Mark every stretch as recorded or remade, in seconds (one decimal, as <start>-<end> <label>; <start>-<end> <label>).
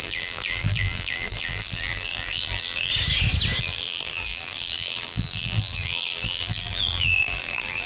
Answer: 0.0-2.9 remade; 2.9-3.6 recorded; 3.6-7.9 remade